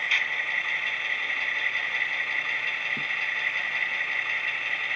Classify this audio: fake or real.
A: real